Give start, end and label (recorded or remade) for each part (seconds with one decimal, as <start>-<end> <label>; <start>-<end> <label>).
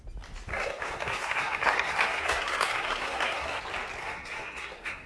0.0-0.5 recorded; 0.5-3.6 remade; 3.6-4.0 recorded; 4.0-5.1 remade